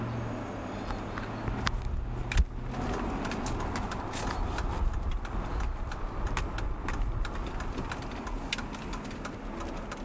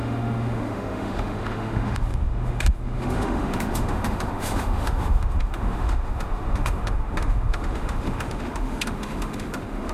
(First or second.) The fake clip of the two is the second